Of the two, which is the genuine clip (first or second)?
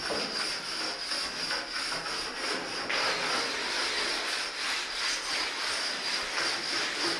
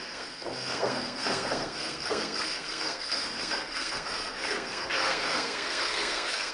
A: first